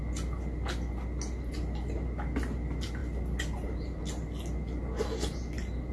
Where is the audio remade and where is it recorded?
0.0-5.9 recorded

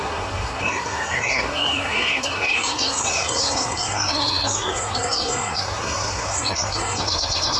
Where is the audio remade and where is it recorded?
0.0-7.6 remade

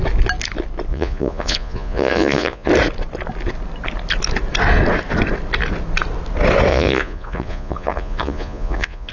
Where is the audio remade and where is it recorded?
0.0-0.9 recorded; 0.9-2.7 remade; 2.7-6.7 recorded; 6.7-9.1 remade

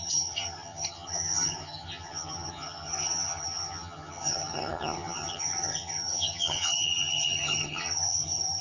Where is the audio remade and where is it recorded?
0.0-8.6 remade

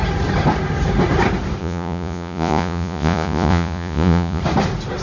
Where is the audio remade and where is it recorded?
0.0-1.6 recorded; 1.6-4.4 remade; 4.4-5.0 recorded

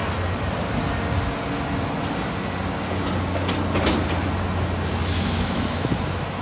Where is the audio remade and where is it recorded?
0.0-5.0 recorded; 5.0-5.9 remade; 5.9-6.4 recorded